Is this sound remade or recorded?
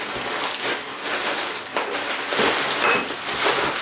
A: recorded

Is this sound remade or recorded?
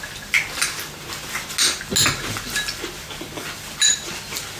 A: recorded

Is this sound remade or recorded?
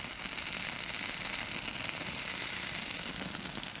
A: remade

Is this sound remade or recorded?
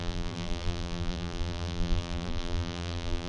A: remade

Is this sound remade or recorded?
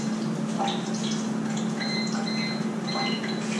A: recorded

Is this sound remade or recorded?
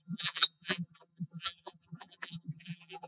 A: remade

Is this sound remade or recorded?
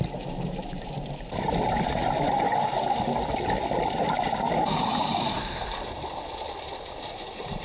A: remade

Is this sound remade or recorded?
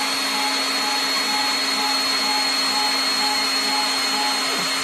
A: recorded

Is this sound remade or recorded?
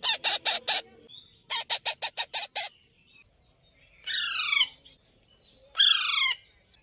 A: recorded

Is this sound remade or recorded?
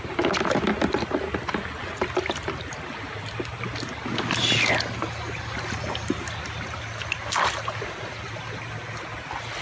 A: recorded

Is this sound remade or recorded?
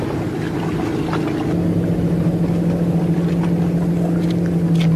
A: recorded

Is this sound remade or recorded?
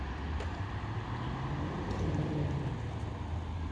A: recorded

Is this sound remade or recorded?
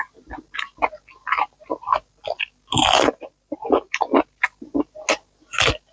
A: recorded